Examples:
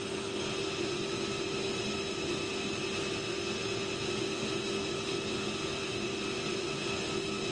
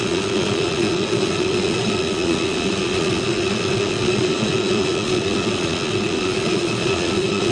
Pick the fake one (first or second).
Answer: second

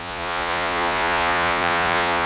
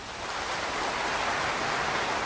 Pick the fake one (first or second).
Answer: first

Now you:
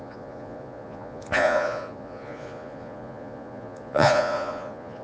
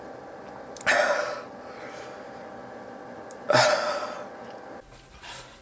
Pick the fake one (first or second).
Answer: first